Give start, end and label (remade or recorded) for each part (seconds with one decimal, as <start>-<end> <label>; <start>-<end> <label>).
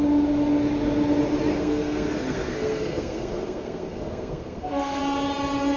0.0-1.5 recorded; 1.5-5.0 remade; 5.0-5.8 recorded